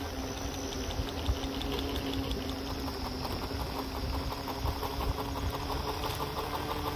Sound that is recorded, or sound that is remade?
recorded